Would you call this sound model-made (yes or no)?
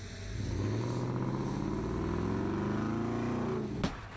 no